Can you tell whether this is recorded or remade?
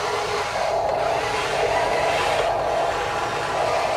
recorded